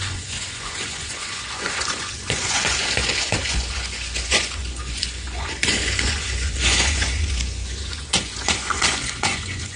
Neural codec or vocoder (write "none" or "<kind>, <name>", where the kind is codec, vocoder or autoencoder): vocoder, Vocos